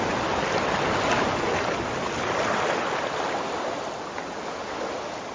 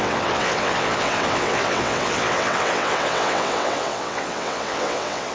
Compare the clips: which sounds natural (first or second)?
first